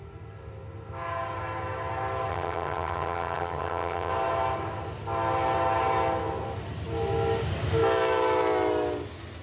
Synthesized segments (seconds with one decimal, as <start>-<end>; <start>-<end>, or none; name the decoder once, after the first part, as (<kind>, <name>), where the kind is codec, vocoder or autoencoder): 2.3-4.1 (vocoder, HiFi-GAN)

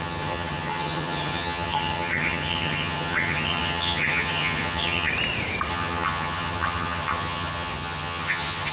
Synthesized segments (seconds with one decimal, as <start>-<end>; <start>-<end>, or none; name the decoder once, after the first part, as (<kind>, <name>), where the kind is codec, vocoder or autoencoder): 0.0-5.1 (vocoder, HiFi-GAN); 5.7-8.7

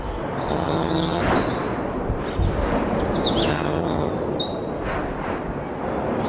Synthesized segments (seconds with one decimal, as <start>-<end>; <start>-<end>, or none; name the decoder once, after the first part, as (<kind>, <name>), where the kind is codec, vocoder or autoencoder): 0.5-1.2 (vocoder, HiFi-GAN); 3.5-4.1

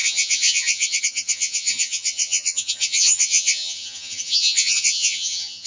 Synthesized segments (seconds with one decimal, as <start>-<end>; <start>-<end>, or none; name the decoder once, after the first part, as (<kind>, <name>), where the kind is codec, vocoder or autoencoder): 0.0-5.7 (vocoder, HiFi-GAN)

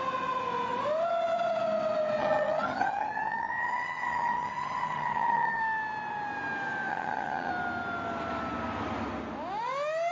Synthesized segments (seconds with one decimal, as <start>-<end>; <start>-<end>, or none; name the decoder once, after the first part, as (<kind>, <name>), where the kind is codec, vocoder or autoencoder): 2.2-5.6 (vocoder, HiFi-GAN); 6.9-7.5

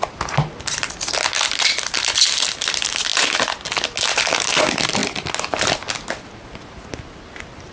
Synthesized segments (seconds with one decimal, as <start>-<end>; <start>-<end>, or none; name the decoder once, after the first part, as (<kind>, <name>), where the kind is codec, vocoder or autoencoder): none